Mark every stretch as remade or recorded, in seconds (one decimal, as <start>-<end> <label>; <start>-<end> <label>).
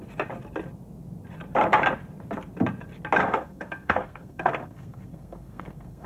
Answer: 0.0-3.2 recorded; 3.2-6.1 remade